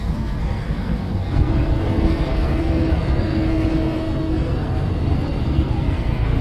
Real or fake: fake